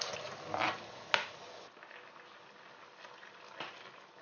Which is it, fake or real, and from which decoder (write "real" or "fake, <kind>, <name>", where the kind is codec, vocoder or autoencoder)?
real